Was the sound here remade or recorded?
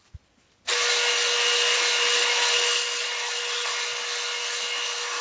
recorded